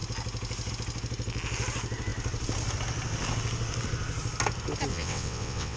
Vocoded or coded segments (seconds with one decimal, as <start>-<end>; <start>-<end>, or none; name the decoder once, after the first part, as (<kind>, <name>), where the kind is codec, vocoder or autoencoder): 4.9-5.8 (vocoder, WaveNeXt)